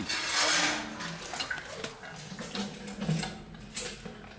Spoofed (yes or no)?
no